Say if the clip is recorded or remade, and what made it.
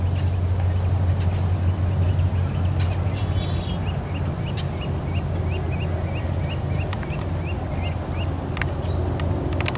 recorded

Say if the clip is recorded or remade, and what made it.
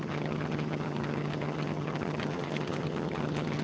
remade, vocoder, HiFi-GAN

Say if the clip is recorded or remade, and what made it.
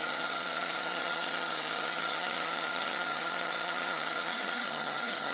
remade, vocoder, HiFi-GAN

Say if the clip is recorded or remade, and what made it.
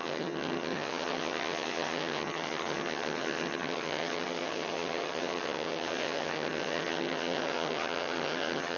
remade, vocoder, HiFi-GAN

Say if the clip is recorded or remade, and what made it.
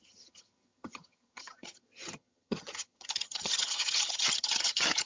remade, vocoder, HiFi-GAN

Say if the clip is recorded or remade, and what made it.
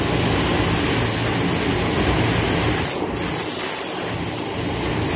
recorded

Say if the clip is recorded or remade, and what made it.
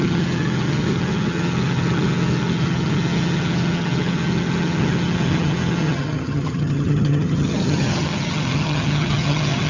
remade, vocoder, HiFi-GAN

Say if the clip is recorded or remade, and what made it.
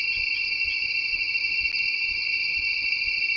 recorded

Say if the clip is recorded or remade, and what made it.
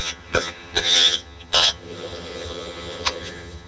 remade, vocoder, HiFi-GAN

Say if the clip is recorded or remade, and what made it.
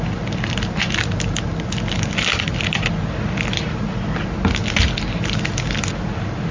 recorded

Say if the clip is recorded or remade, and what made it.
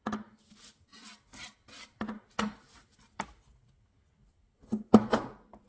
recorded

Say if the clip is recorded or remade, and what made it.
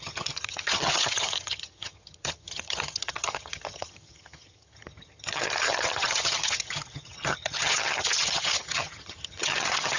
remade, vocoder, HiFi-GAN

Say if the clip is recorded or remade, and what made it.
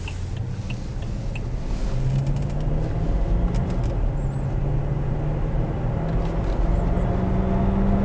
recorded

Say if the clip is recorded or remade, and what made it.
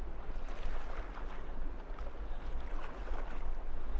recorded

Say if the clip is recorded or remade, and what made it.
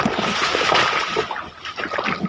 recorded